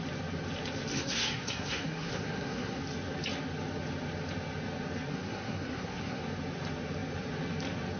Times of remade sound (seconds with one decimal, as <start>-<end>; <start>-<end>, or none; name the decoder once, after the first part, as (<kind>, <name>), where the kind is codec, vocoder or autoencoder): 0.9-2.8 (codec, SNAC); 5.1-6.2